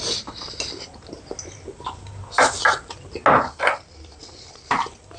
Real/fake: real